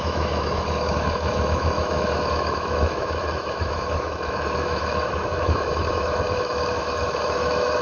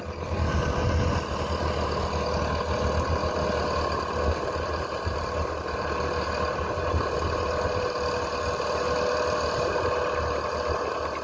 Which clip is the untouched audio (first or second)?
second